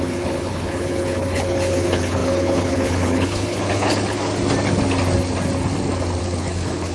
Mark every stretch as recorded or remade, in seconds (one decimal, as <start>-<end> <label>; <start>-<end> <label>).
0.0-4.3 remade; 4.3-6.2 recorded; 6.2-6.9 remade